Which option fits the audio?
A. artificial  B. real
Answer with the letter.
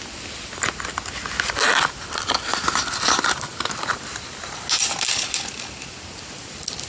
B